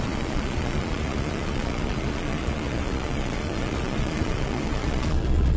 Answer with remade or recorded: remade